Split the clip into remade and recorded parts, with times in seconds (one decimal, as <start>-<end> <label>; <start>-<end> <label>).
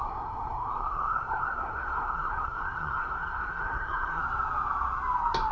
0.0-4.2 remade; 4.2-5.5 recorded